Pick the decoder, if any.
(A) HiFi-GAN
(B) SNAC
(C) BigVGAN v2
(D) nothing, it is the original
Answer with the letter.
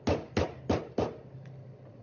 D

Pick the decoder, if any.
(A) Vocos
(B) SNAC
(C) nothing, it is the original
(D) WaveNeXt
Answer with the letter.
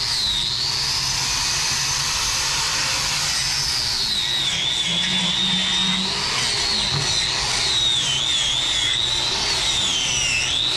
C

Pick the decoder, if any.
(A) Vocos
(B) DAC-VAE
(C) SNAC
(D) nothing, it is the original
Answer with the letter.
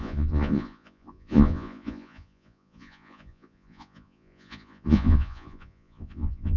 A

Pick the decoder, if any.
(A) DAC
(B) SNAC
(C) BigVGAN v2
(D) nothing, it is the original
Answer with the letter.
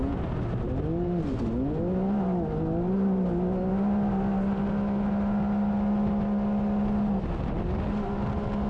D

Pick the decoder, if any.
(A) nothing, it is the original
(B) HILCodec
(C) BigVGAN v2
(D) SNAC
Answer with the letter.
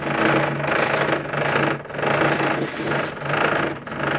A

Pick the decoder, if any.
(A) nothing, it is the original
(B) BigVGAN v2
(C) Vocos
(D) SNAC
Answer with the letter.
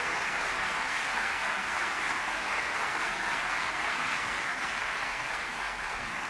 D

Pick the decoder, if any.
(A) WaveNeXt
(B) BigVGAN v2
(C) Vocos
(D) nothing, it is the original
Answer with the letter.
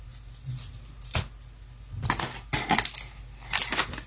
D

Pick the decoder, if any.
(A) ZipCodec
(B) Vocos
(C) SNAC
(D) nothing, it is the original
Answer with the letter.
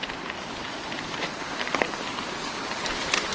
D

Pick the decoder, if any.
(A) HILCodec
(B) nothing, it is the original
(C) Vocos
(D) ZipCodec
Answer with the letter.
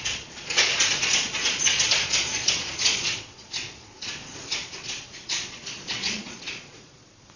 C